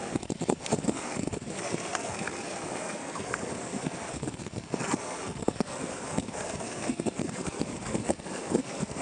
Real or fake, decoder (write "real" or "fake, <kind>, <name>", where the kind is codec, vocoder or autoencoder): fake, codec, SNAC